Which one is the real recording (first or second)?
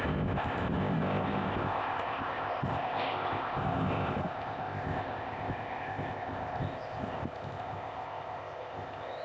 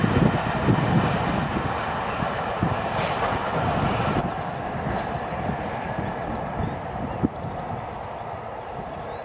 second